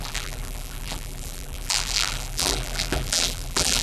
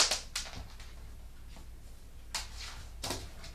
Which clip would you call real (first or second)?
second